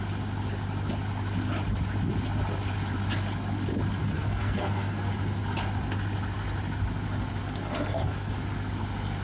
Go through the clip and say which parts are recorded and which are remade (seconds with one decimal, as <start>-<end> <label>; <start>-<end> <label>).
0.0-4.1 recorded; 4.1-5.1 remade; 5.1-7.4 recorded; 7.4-8.3 remade; 8.3-9.2 recorded